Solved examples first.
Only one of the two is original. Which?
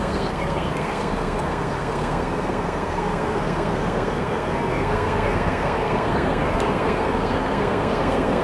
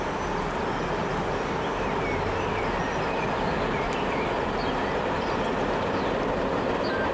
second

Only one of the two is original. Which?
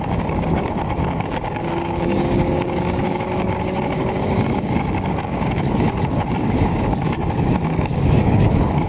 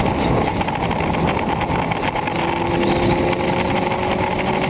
second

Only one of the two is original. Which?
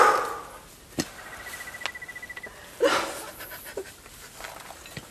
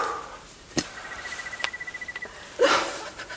first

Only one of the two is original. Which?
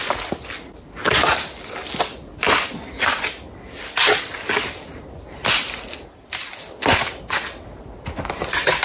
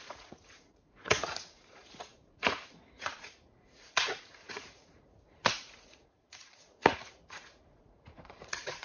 first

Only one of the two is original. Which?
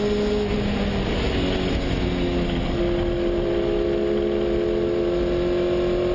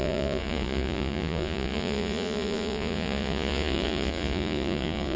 first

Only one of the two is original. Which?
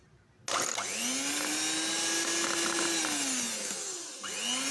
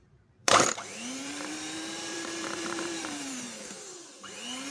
first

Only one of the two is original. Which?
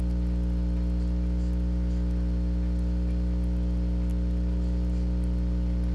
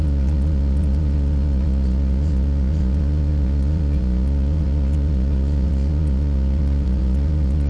first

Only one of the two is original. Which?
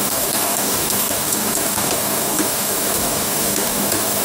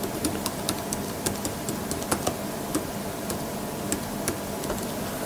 second